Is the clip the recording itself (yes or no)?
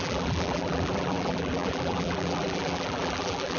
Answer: no